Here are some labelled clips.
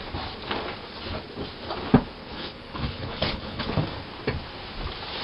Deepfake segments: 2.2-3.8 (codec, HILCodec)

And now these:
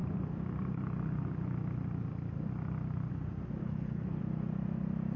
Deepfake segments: 3.6-4.2 (codec, HILCodec)

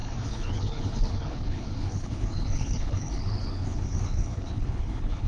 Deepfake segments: 0.0-5.3 (codec, HILCodec)

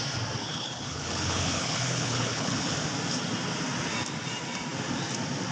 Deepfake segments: 0.4-2.7 (codec, HILCodec)